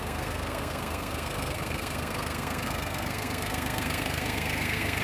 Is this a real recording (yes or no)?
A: no